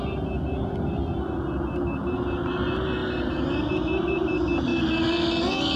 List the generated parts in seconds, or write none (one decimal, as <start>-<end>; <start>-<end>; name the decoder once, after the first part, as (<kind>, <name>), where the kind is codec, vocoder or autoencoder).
3.0-3.7 (vocoder, BigVGAN v2)